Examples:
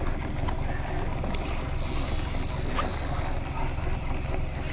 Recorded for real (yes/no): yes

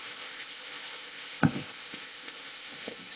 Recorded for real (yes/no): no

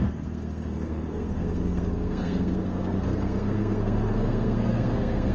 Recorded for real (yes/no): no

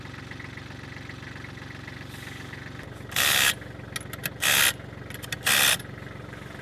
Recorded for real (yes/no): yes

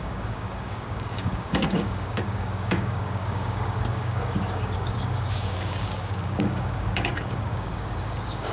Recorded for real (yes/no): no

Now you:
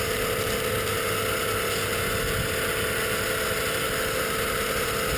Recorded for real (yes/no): yes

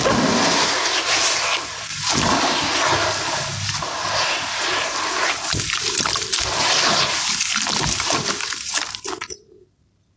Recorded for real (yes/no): yes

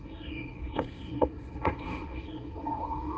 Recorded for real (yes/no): no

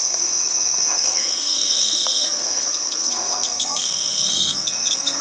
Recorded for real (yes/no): no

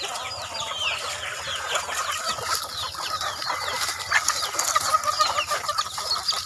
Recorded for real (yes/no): yes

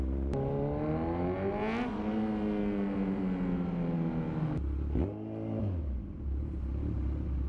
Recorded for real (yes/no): yes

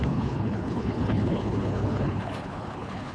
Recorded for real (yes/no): no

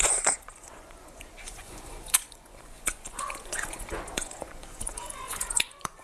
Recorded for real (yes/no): no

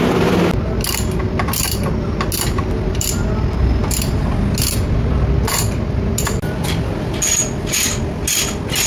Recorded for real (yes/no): yes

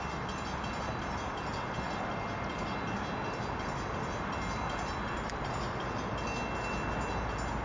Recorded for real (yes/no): yes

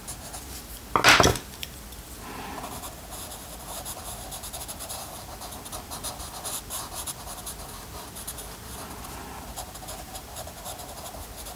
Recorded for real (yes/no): yes